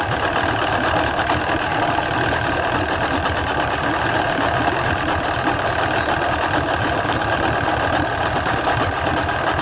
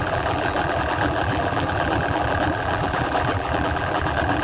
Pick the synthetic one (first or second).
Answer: second